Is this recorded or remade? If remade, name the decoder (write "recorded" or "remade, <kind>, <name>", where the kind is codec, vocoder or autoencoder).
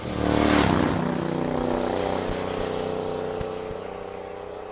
recorded